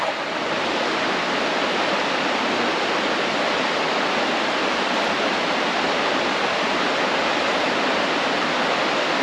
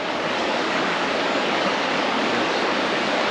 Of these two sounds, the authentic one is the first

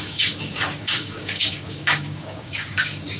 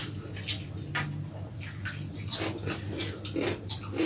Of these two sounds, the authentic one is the second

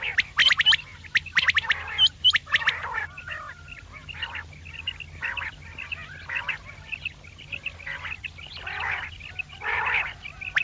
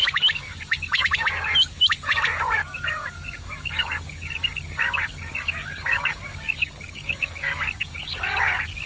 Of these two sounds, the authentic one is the first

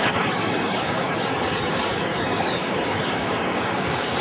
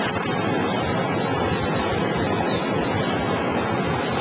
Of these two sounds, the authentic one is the second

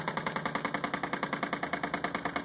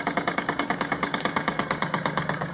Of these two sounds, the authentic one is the first